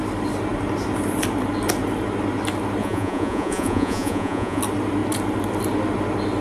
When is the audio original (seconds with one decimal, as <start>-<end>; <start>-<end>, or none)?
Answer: 0.0-2.8; 4.6-6.4